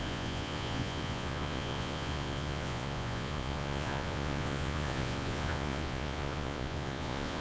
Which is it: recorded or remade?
remade